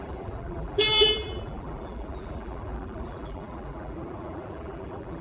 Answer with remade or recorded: remade